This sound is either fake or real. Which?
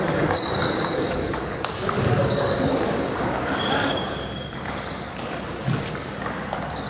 fake